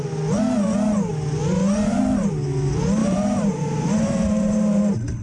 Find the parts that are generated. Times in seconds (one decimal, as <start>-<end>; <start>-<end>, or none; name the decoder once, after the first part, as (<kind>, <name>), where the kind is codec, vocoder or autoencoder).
3.0-4.8 (vocoder, BigVGAN v2)